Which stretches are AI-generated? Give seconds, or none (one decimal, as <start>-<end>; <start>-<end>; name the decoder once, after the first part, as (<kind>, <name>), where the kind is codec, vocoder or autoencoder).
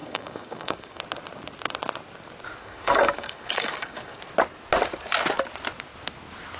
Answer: 0.0-1.0 (codec, DAC); 2.6-4.2